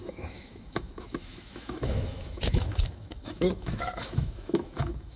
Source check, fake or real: fake